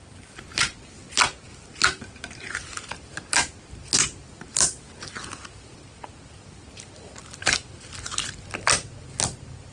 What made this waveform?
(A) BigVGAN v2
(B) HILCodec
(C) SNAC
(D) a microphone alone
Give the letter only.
D